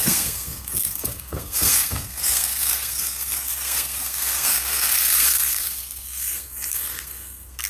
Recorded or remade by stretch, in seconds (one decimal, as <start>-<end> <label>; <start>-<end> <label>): 0.0-7.7 remade